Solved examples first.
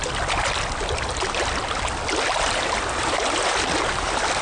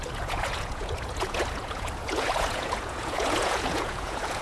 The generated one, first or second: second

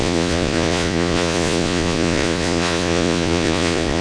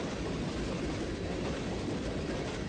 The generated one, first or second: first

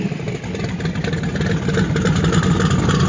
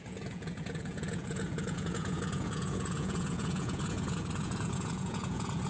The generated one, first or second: second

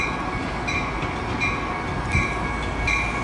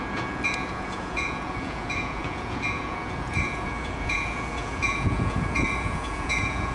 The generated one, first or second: second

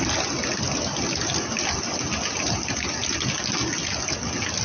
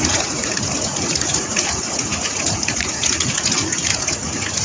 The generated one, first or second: second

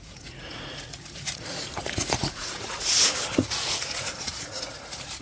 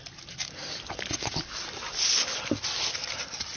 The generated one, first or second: first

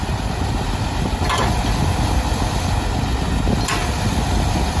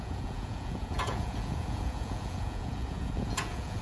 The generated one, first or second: second